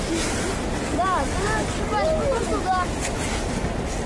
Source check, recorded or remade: recorded